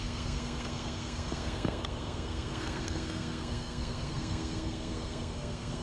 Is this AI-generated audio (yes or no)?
yes